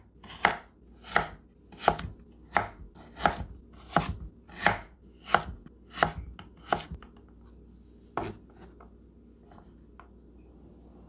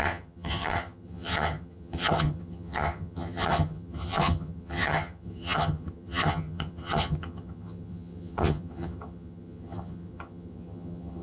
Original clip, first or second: first